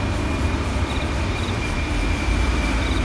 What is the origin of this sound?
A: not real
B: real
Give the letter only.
B